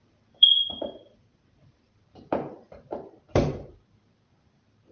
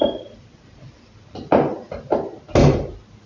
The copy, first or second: first